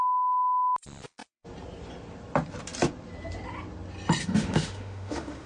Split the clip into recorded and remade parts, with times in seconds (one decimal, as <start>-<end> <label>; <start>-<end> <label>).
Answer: 0.0-4.2 recorded; 4.2-5.5 remade